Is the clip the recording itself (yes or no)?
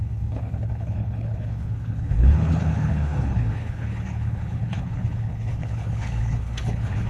no